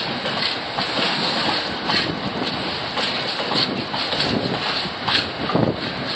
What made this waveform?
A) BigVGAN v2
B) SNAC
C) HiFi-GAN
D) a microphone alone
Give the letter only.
D